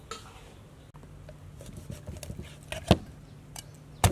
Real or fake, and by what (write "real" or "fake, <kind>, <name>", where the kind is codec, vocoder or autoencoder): real